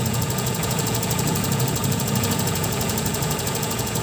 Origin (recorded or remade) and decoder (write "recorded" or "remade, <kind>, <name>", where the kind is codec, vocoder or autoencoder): remade, vocoder, Vocos